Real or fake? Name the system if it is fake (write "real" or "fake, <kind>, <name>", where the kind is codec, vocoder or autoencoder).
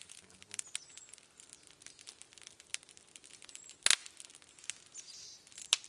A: real